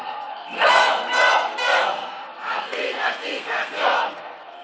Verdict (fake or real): fake